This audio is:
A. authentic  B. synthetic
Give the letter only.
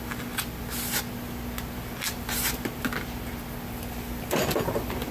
A